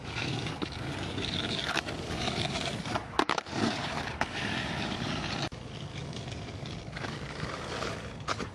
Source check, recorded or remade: remade